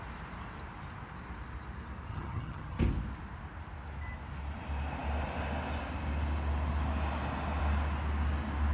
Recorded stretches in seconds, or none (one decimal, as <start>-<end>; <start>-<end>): 0.0-2.1; 2.8-8.7